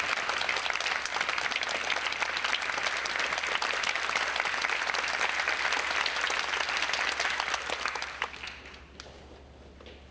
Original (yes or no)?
yes